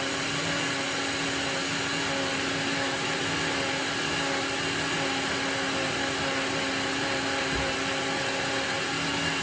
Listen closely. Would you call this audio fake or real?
real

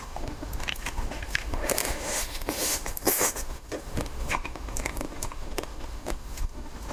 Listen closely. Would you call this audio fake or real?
fake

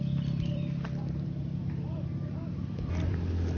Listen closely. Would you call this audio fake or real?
fake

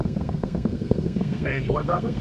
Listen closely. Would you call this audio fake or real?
fake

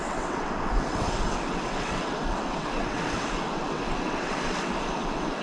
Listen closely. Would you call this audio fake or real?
fake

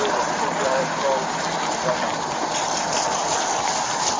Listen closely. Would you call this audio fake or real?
real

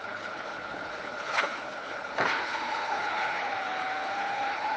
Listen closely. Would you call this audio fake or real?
fake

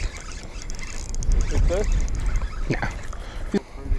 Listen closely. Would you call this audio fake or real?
real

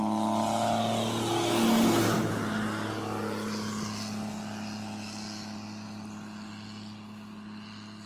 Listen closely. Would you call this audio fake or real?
real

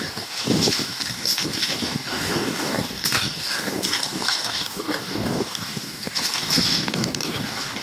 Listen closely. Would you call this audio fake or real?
fake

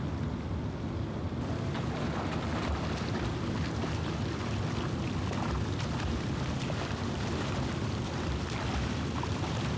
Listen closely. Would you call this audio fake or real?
real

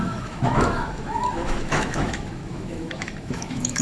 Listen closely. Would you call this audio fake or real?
fake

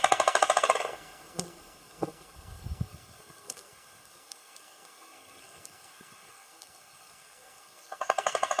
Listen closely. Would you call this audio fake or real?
fake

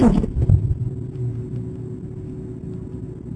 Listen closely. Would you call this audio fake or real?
real